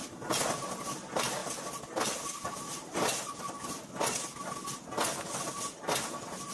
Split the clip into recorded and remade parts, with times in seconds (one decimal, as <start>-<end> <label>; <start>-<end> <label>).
0.0-6.5 recorded